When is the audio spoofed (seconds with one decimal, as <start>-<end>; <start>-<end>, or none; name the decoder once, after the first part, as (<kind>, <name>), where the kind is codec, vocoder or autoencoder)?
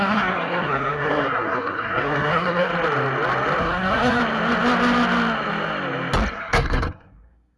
0.0-2.7 (codec, SNAC); 3.6-4.2; 6.3-7.6